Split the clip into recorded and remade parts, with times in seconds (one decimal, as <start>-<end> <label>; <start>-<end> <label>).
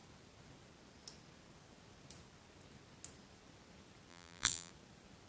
0.0-4.1 recorded; 4.1-4.7 remade; 4.7-5.3 recorded